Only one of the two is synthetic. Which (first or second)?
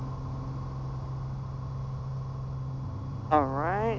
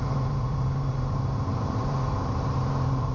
second